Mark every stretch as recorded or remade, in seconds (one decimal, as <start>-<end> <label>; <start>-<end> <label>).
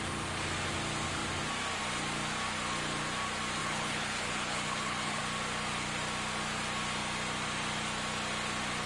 0.0-3.6 recorded; 3.6-5.2 remade; 5.2-8.9 recorded